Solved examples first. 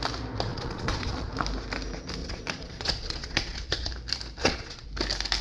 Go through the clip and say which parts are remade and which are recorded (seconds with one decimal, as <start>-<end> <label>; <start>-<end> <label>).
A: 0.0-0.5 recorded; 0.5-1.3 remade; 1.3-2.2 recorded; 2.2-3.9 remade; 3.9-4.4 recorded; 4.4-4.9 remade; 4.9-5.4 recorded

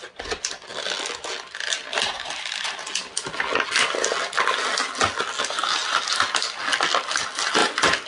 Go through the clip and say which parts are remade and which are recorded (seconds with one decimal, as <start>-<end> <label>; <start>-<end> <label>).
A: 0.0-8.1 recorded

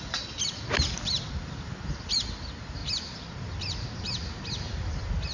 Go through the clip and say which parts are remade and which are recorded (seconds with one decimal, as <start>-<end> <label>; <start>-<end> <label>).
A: 0.0-5.3 recorded

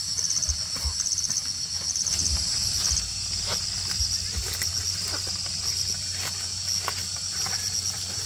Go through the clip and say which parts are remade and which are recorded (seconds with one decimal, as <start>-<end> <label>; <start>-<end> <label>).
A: 0.0-8.3 recorded

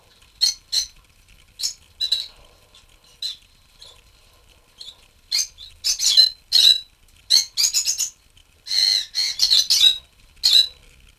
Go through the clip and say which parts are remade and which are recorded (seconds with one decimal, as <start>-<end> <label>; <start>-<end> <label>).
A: 0.0-11.2 recorded

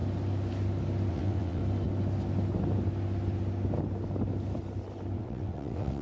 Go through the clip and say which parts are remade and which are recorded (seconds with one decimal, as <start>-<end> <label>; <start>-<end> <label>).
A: 0.0-1.1 recorded; 1.1-1.6 remade; 1.6-5.2 recorded; 5.2-6.0 remade

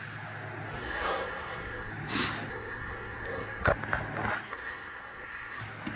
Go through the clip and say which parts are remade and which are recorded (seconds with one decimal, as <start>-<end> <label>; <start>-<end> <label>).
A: 0.0-0.8 recorded; 0.8-1.9 remade; 1.9-2.5 recorded; 2.5-3.7 remade; 3.7-4.5 recorded; 4.5-5.6 remade; 5.6-6.0 recorded